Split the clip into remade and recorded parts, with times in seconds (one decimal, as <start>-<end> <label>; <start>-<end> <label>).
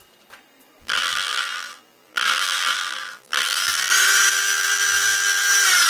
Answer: 0.0-0.8 recorded; 0.8-3.9 remade; 3.9-4.3 recorded; 4.3-5.5 remade; 5.5-5.9 recorded